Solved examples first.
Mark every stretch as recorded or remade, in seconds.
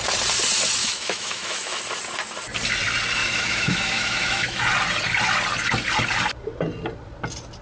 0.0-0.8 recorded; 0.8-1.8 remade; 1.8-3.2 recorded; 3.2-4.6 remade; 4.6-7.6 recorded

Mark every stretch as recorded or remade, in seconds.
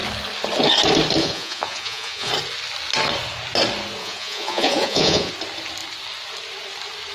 0.0-1.2 recorded; 1.2-2.3 remade; 2.3-4.0 recorded; 4.0-5.3 remade; 5.3-7.1 recorded